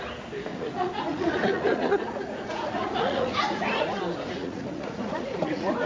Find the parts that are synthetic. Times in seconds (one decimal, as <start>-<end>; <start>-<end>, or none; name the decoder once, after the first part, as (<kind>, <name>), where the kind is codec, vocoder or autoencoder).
0.5-4.0 (vocoder, Vocos); 4.4-5.9